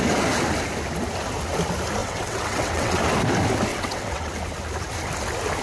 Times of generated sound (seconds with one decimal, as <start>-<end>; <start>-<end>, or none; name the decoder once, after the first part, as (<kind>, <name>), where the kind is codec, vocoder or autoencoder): 2.0-3.0 (vocoder, WaveNeXt); 3.7-4.3